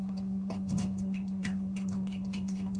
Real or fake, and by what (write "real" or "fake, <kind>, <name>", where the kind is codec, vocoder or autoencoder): fake, codec, SNAC